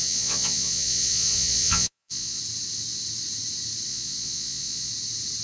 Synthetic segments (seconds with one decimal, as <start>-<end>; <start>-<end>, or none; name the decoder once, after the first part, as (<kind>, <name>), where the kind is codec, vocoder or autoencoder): 0.0-2.4 (vocoder, Vocos); 3.9-4.9

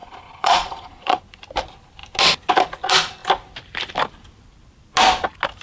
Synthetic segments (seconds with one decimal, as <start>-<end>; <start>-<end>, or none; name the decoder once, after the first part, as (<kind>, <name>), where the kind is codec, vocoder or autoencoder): 0.0-1.2 (vocoder, Vocos)